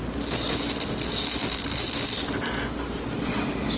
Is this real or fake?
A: real